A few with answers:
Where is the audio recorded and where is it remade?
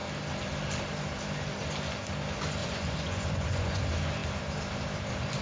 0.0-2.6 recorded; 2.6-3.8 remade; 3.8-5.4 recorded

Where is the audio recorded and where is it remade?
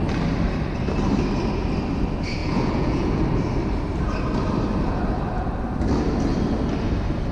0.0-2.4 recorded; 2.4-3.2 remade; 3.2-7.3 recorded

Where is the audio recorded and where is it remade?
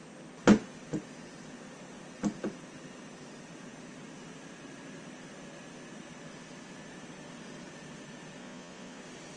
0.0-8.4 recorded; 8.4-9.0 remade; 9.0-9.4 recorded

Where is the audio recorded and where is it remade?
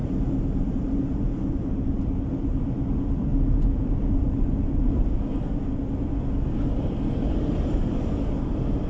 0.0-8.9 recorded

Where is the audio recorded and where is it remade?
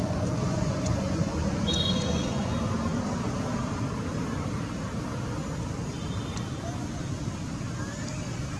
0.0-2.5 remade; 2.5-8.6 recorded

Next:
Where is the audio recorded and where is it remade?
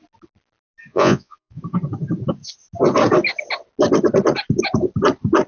0.0-0.9 recorded; 0.9-1.6 remade; 1.6-5.5 recorded